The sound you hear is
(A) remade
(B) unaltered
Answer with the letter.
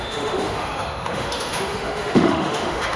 A